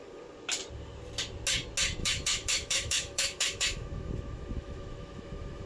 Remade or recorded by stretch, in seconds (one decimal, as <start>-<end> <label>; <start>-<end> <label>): 0.0-2.0 recorded; 2.0-5.7 remade